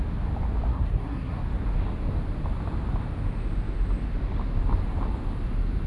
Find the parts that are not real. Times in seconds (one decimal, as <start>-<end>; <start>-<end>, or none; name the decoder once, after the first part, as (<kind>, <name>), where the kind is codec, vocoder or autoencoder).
0.7-1.4 (codec, SNAC)